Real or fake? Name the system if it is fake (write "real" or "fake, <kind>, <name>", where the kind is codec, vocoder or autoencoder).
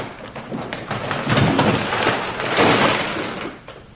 real